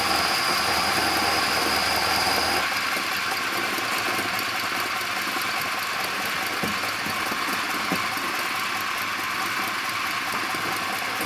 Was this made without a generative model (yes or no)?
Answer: yes